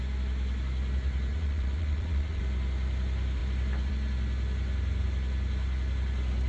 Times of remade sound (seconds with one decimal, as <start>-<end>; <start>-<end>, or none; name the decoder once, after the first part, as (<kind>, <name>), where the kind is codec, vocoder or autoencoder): 1.3-2.4 (vocoder, Vocos)